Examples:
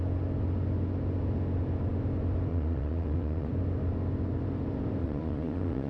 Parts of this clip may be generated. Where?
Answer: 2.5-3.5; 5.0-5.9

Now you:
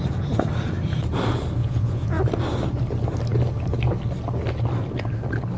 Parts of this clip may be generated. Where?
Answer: 1.6-2.2

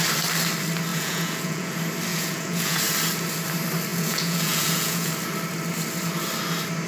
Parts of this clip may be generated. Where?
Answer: 0.9-1.7; 2.1-2.8; 3.9-5.1

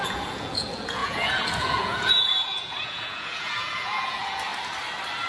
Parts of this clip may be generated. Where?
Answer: 0.0-4.5

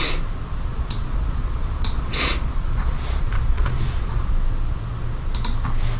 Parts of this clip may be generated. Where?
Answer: 0.7-4.3

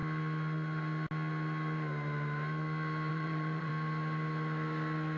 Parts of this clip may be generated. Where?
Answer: 3.1-3.7

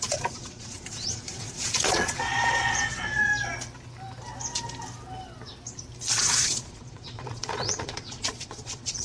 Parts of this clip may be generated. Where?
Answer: 0.0-3.3; 6.2-9.0

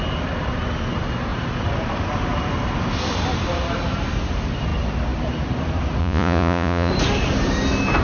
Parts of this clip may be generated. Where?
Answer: 6.0-6.9